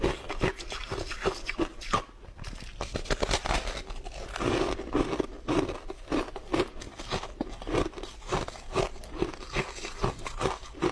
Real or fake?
real